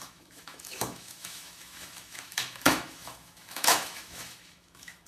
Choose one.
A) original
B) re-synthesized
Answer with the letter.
B